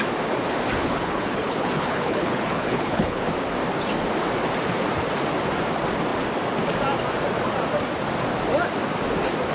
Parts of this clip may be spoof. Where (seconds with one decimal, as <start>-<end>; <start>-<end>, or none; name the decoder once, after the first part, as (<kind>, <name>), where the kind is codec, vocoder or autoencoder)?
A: 0.8-3.2 (codec, HILCodec)